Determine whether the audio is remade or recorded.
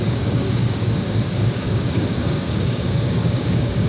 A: remade